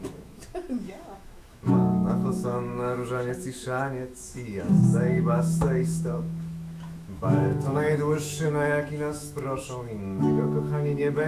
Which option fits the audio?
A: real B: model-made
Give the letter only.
B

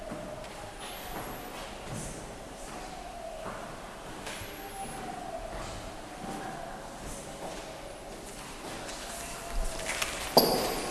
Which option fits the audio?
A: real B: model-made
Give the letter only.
A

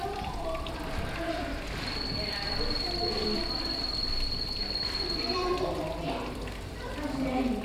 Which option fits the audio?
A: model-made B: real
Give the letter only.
A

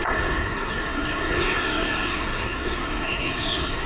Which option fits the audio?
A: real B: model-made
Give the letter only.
B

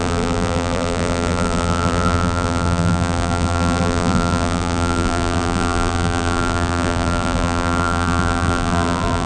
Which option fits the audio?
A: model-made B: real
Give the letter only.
A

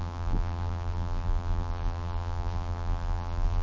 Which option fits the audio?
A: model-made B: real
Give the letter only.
A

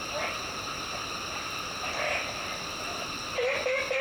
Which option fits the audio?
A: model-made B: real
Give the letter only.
B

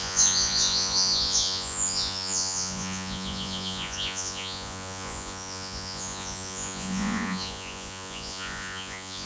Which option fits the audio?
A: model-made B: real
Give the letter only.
A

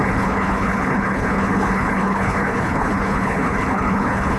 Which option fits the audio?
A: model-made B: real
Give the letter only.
A